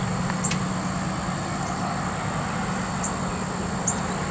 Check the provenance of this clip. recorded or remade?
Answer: recorded